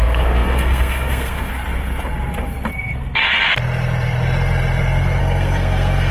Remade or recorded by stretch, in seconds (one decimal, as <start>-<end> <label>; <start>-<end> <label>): 0.0-1.5 remade; 1.5-5.2 recorded; 5.2-6.1 remade